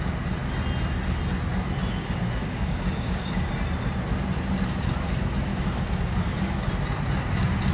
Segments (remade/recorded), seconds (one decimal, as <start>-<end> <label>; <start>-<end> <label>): 0.0-2.0 recorded; 2.0-3.5 remade; 3.5-5.5 recorded; 5.5-6.7 remade; 6.7-7.7 recorded